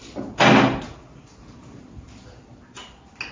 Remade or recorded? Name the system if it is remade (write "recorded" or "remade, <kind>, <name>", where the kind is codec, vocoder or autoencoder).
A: recorded